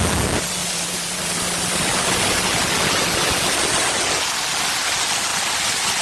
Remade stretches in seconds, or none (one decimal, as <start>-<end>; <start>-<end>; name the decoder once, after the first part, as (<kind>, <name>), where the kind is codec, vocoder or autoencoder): 0.6-2.4 (vocoder, BigVGAN v2); 5.3-6.0